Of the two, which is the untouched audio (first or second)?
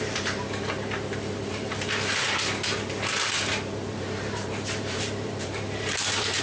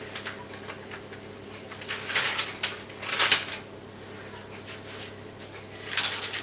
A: second